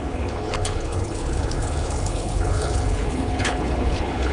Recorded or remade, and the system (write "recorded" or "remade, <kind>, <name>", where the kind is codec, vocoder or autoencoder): remade, codec, HILCodec